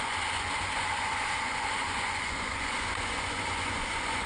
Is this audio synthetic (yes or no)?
yes